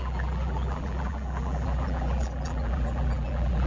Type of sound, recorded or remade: remade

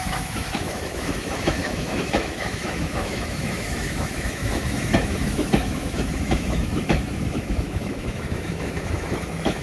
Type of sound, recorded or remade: remade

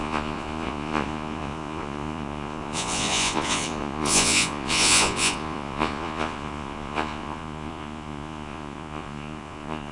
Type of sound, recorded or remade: remade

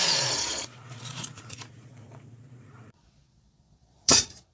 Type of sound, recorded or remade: remade